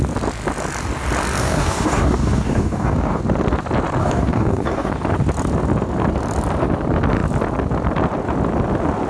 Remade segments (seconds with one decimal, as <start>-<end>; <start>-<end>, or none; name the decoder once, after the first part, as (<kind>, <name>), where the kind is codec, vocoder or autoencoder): 1.4-3.2 (codec, DAC); 4.0-4.9